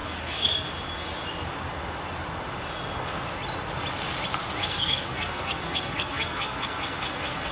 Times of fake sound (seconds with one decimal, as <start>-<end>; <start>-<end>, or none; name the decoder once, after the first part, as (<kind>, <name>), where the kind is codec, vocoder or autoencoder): 0.0-0.7 (codec, SNAC); 4.6-7.5